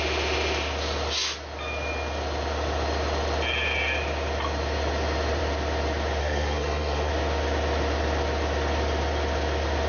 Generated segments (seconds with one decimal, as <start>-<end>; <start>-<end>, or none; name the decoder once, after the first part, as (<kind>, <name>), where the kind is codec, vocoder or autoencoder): 6.2-7.1 (codec, SNAC)